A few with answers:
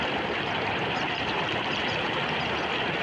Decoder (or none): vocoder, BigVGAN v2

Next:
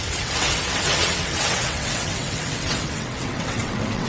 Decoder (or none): vocoder, WaveNeXt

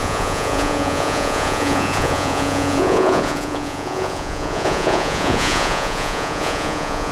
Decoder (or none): vocoder, Vocos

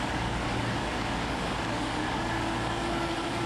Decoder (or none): codec, DAC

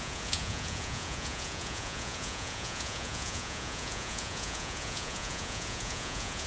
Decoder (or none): vocoder, Vocos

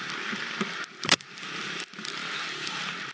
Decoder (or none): vocoder, BigVGAN v2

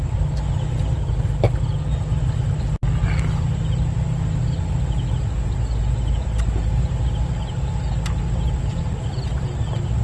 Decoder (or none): none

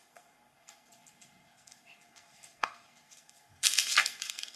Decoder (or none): codec, SNAC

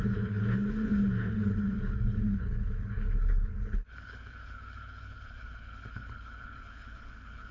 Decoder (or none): codec, HILCodec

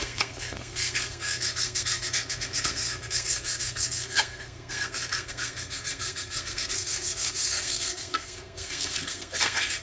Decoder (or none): codec, SNAC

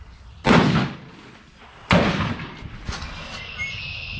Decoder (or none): none